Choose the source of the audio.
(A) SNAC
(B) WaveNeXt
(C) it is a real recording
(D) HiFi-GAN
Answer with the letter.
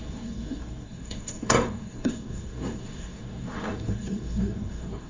A